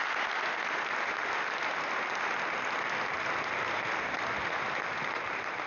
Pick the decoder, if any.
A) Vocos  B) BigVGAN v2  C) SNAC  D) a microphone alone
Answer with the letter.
D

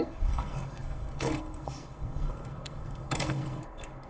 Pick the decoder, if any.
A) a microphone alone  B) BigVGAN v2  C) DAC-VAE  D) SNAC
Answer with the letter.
D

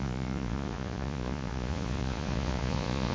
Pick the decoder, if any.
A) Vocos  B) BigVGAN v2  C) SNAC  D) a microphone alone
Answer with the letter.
A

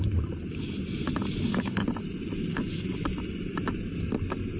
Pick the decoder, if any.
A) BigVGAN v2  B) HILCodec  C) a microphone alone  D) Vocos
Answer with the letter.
C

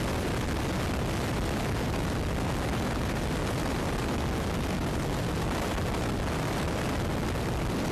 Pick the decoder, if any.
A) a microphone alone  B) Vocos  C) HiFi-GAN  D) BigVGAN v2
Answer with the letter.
A